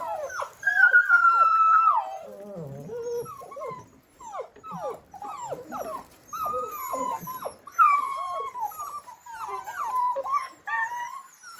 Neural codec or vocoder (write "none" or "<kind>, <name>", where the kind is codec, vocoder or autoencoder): vocoder, BigVGAN v2